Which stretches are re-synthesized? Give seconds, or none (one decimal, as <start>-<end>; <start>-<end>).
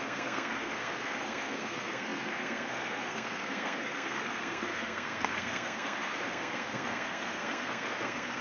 0.0-8.4